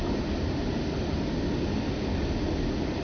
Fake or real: real